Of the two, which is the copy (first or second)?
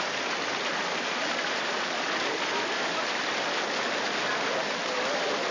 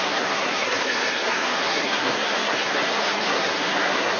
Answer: second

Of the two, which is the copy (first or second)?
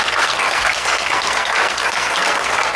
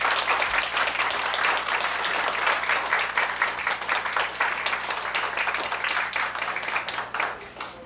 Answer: first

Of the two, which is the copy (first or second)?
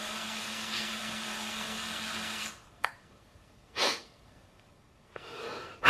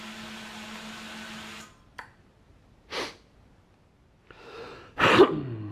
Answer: first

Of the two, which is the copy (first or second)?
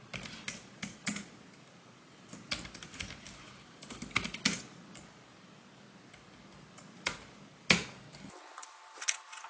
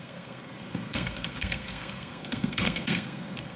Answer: second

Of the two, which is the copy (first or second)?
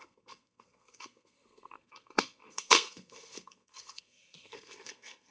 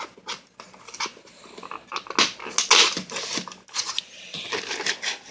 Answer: first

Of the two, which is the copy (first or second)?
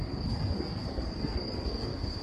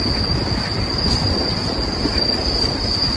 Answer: first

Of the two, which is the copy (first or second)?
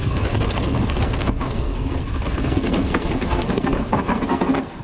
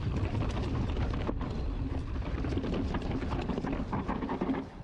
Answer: first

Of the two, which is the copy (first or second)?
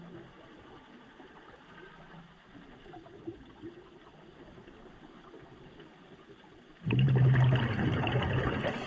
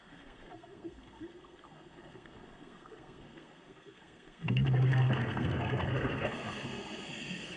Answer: second